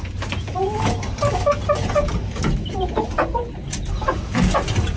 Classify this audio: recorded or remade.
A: recorded